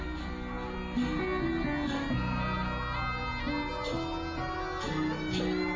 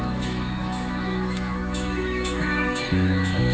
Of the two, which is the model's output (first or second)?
second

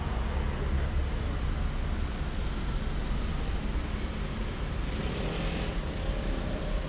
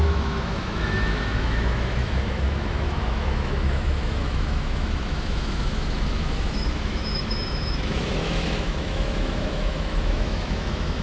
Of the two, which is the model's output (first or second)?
second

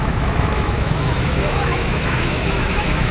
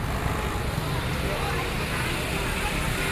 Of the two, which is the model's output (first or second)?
first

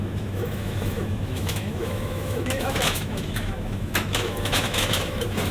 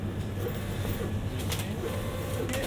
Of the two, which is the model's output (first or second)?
first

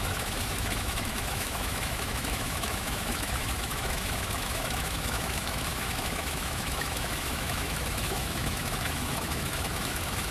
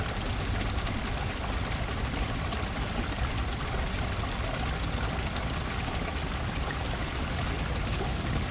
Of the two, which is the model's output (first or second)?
first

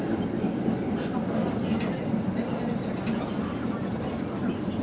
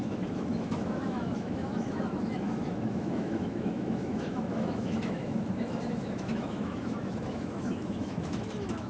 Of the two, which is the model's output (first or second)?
second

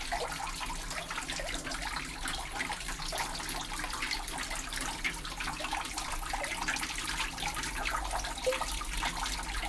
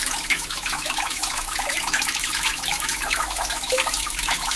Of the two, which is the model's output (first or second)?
second